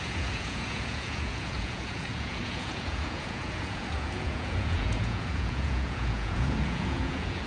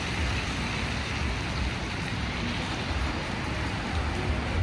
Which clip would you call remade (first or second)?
first